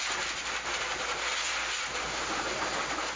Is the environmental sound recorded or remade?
recorded